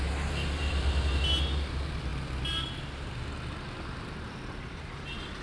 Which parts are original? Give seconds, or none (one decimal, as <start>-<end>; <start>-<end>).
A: 0.0-5.4